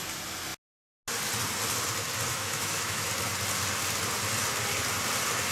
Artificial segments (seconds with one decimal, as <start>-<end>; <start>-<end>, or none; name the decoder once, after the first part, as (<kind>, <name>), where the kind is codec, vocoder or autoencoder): 2.3-3.1 (autoencoder, DAC-VAE)